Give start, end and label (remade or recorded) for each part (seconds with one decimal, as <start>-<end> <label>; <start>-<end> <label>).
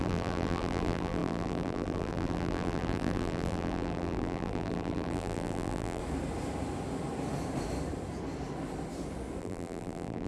0.0-6.0 remade; 6.0-9.4 recorded; 9.4-10.3 remade